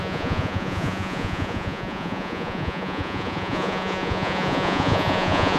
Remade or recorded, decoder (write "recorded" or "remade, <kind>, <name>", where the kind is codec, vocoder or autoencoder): remade, vocoder, Vocos